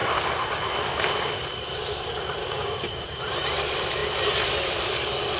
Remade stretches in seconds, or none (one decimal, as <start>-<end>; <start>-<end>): 2.4-3.2